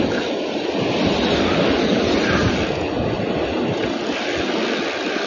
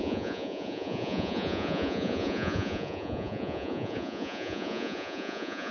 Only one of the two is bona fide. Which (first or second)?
first